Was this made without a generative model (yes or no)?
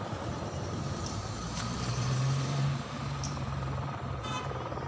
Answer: no